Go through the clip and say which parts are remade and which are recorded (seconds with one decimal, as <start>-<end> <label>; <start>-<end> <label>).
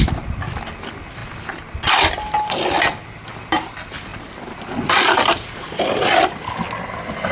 0.0-7.3 recorded